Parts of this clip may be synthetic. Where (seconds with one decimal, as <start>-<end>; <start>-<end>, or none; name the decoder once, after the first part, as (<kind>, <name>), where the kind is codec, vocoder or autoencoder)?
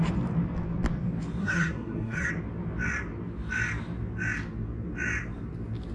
1.4-2.3 (codec, SNAC)